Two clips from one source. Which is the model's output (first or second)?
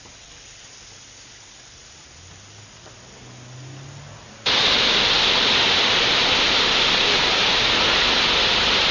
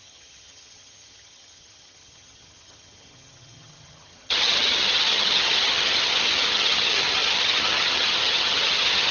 second